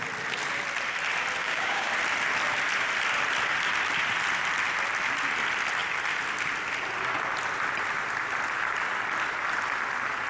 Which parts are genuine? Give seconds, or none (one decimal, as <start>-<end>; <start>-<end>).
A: 0.0-1.4; 1.9-10.3